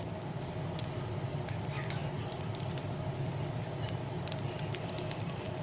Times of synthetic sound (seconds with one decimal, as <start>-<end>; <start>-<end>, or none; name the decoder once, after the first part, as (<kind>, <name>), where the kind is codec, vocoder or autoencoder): none

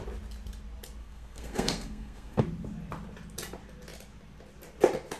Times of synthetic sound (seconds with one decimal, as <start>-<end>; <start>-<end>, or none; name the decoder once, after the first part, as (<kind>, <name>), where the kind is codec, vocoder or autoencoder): 1.0-2.4 (codec, SNAC)

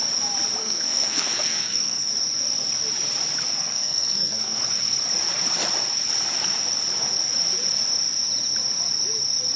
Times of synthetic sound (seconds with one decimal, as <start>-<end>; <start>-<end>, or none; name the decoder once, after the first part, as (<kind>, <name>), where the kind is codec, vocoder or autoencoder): 0.6-2.1 (codec, SNAC); 3.5-4.6

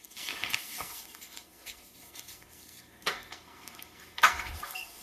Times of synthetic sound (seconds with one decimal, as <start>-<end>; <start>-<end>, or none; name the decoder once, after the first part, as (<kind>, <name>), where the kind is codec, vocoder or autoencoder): 0.0-5.0 (codec, SNAC)

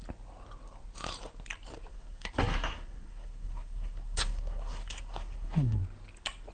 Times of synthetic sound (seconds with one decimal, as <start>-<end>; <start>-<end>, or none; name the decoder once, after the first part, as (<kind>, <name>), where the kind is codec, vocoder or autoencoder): 1.9-5.8 (codec, SNAC)